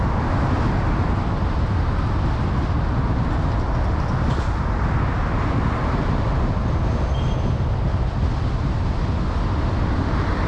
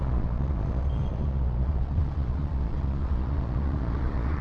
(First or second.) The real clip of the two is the first